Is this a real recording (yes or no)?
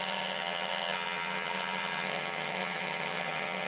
no